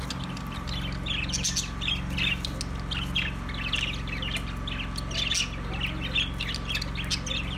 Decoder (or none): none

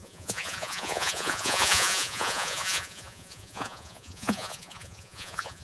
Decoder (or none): vocoder, Vocos